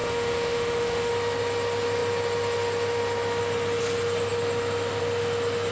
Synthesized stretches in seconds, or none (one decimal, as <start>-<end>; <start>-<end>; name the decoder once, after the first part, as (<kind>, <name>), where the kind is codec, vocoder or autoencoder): 0.0-1.1 (autoencoder, DAC-VAE)